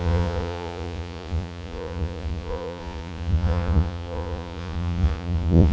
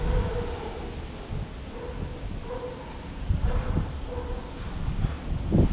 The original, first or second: second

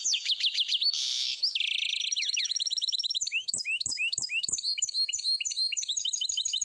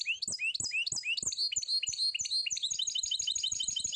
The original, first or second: second